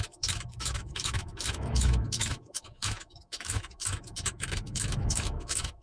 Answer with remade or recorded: remade